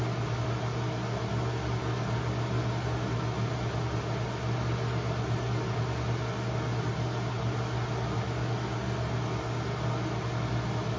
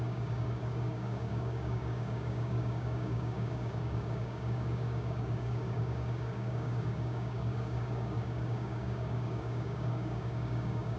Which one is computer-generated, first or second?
second